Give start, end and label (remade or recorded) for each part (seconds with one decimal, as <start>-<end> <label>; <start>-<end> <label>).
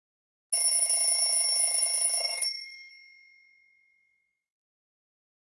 0.0-2.2 recorded; 2.2-2.9 remade; 2.9-5.5 recorded